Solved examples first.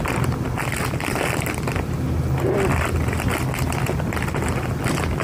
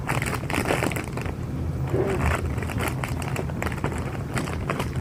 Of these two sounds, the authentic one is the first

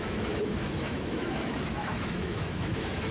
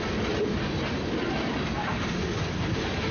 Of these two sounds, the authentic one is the second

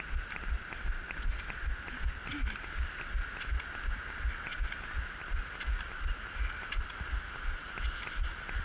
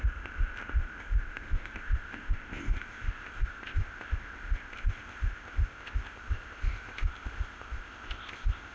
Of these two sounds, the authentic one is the first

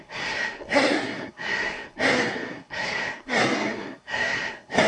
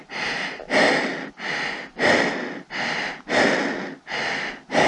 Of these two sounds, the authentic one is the second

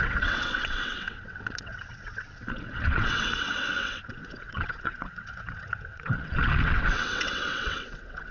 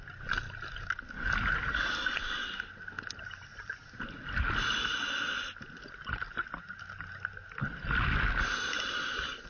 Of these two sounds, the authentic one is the second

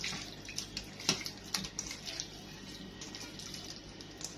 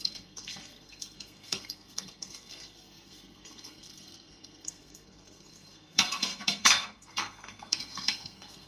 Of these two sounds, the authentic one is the first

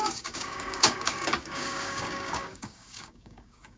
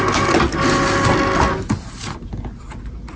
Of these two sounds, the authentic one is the second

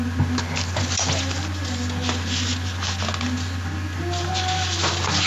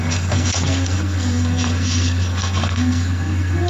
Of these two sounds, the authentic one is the first